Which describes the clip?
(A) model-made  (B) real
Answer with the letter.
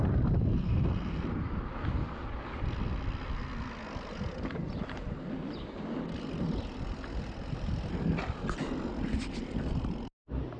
B